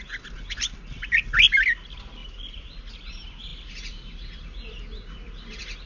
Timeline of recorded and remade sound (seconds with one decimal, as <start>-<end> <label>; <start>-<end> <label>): 0.0-5.9 recorded